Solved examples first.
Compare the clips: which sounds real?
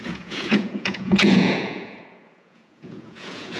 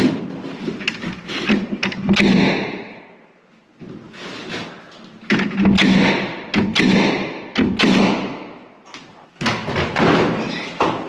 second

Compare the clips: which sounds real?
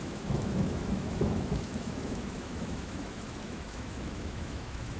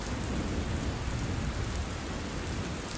second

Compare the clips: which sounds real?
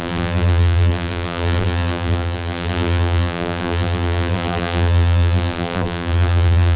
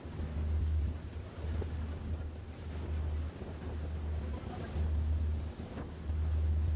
second